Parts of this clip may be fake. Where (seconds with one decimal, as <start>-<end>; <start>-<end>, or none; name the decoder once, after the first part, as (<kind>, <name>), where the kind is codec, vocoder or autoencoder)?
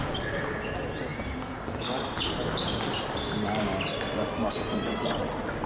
none